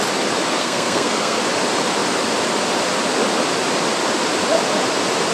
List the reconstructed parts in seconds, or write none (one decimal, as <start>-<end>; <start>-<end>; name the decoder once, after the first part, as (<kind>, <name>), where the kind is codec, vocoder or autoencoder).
0.6-1.4 (codec, SNAC)